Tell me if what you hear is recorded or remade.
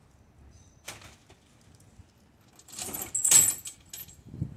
recorded